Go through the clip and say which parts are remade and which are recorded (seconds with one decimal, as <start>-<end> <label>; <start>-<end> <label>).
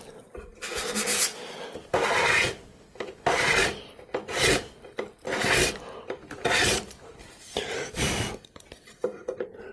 0.0-9.7 recorded